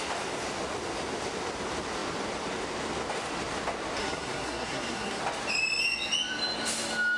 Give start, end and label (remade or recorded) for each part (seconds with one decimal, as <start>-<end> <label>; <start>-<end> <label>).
0.0-4.0 recorded; 4.0-5.2 remade; 5.2-7.2 recorded